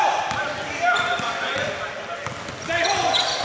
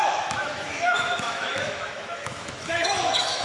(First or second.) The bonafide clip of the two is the first